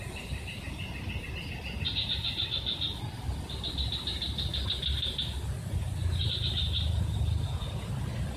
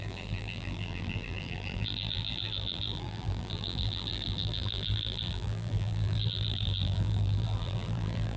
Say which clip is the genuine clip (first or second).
first